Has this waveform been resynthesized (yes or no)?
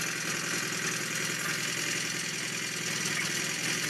no